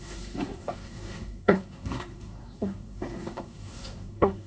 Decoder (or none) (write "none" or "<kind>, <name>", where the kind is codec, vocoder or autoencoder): codec, SNAC